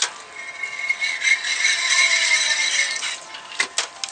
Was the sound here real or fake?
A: real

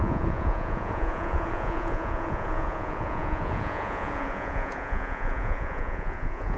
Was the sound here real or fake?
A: fake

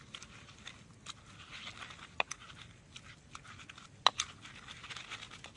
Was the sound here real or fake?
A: real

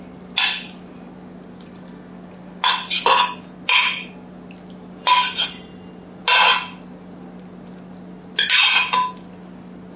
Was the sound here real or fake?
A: real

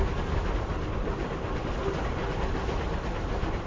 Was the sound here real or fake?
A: real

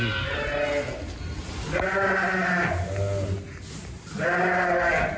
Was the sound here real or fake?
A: real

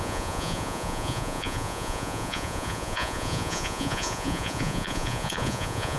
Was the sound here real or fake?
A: fake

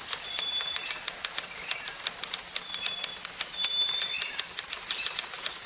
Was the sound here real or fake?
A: real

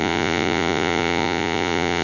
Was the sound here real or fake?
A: fake